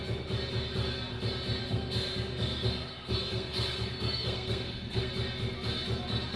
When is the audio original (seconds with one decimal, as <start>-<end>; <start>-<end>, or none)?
0.0-1.6; 5.1-6.4